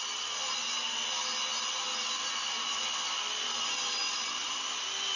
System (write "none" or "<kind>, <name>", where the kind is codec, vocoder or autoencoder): none